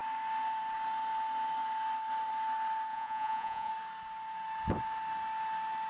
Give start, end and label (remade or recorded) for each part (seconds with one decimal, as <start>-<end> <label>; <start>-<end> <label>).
0.0-2.9 recorded; 2.9-3.7 remade; 3.7-5.9 recorded